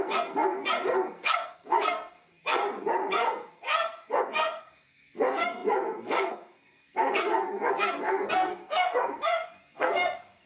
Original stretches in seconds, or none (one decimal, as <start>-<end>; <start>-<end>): 2.6-3.1